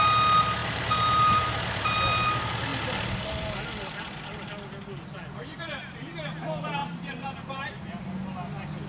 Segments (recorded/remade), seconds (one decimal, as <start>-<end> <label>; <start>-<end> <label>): 0.0-0.6 recorded; 0.6-2.3 remade; 2.3-6.8 recorded; 6.8-7.7 remade; 7.7-8.9 recorded